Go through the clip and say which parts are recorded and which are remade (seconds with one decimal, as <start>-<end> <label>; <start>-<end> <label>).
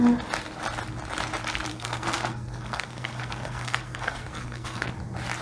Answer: 0.0-1.7 recorded; 1.7-4.9 remade; 4.9-5.4 recorded